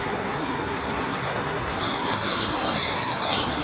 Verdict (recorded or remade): remade